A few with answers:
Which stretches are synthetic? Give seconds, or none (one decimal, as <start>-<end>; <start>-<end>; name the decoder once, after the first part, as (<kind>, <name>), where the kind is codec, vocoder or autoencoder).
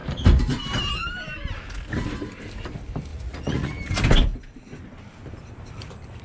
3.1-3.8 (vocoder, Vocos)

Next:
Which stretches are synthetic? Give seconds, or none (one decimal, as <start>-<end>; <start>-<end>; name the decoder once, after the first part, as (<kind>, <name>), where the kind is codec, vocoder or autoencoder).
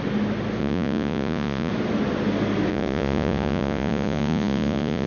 0.6-1.7 (vocoder, Vocos); 2.7-5.1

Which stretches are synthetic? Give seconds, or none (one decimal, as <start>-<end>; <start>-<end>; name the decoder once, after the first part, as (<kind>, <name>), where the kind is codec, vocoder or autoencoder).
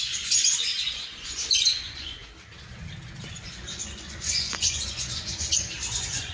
0.0-2.2 (vocoder, Vocos); 3.2-6.3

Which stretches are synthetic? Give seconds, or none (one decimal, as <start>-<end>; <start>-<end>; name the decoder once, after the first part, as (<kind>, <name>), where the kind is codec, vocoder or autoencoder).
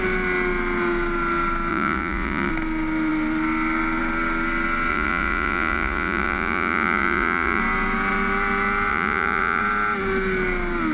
1.7-2.5 (vocoder, Vocos); 4.9-7.6; 8.9-9.6